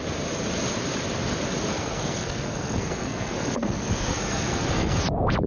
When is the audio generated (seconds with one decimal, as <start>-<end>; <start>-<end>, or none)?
1.7-5.0